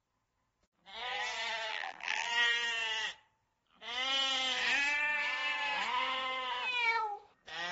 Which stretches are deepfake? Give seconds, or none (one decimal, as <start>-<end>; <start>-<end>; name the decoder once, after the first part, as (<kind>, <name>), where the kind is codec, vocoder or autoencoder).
1.7-2.3 (vocoder, BigVGAN v2)